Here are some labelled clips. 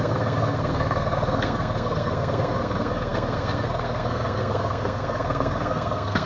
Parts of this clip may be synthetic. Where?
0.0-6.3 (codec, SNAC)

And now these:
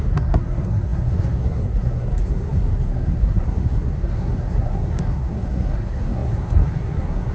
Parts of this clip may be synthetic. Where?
0.0-7.3 (codec, SNAC)

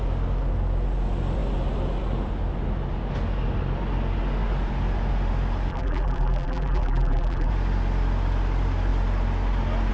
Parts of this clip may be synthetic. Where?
5.7-7.5 (vocoder, BigVGAN v2)

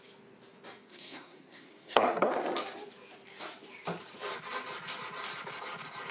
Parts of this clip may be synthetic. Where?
0.9-2.3 (codec, SNAC)

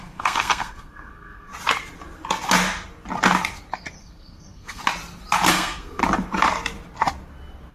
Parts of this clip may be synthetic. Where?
0.0-1.5 (codec, SNAC); 4.0-4.8; 5.5-6.0

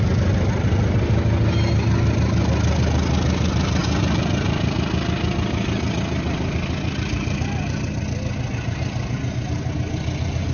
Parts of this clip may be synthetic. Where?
none